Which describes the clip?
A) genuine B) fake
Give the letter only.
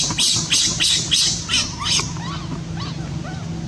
A